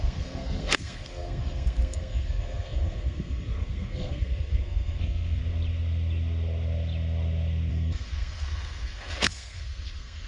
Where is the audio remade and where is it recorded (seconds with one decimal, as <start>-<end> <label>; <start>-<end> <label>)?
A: 0.0-5.4 remade; 5.4-7.7 recorded; 7.7-10.3 remade